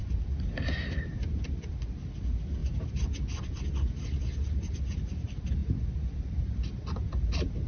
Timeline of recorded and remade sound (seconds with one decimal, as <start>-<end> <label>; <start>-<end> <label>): 0.0-1.5 remade; 1.5-7.7 recorded